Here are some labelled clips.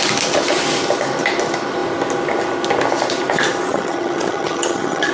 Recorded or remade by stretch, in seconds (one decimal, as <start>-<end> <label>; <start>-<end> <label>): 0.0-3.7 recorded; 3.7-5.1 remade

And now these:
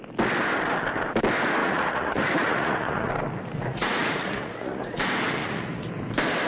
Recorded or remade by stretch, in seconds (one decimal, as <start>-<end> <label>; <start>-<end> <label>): 0.0-1.6 recorded; 1.6-3.1 remade; 3.1-3.7 recorded; 3.7-5.0 remade; 5.0-5.4 recorded; 5.4-5.9 remade; 5.9-6.5 recorded

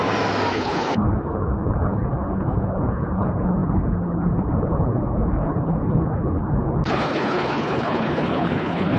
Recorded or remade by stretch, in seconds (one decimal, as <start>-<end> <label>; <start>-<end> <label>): 0.0-0.5 recorded; 0.5-9.0 remade

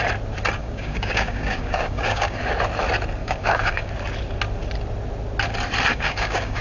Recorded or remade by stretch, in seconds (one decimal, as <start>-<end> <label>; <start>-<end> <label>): 0.0-0.6 recorded; 0.6-2.4 remade; 2.4-3.2 recorded; 3.2-3.9 remade; 3.9-5.9 recorded; 5.9-6.6 remade

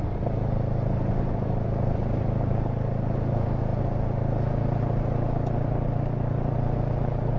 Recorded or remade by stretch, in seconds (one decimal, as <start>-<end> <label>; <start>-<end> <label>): 0.0-7.4 recorded